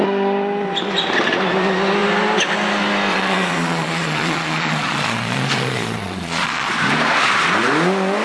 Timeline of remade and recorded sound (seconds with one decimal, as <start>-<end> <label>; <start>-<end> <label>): 0.0-3.1 recorded; 3.1-6.7 remade; 6.7-8.2 recorded